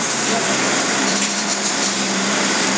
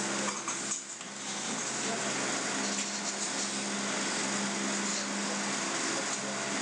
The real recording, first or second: second